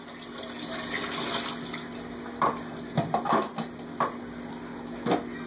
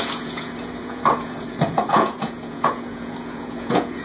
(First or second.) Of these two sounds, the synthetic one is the second